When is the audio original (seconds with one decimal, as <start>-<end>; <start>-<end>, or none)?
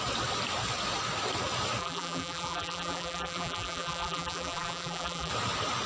0.0-1.8; 5.3-5.9